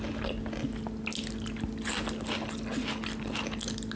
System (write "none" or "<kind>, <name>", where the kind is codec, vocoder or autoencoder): none